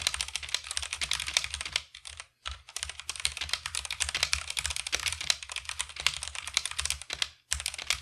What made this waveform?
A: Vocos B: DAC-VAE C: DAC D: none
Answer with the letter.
D